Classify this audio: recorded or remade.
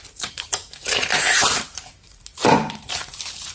remade